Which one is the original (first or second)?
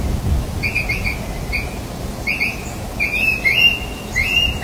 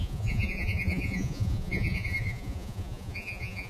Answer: first